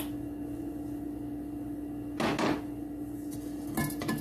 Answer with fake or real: real